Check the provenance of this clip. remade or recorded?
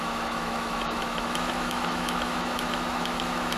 remade